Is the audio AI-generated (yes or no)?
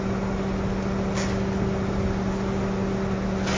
no